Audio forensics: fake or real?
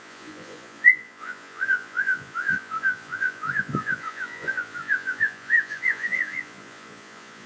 fake